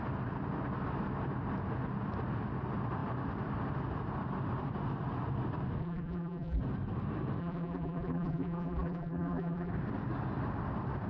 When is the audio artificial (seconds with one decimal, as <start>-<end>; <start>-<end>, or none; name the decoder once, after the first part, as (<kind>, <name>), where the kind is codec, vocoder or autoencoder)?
5.8-6.6 (vocoder, BigVGAN v2); 7.4-9.7